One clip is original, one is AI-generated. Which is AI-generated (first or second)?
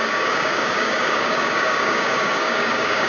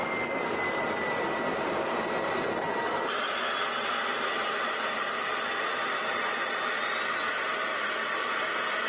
first